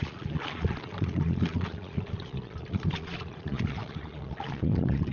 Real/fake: fake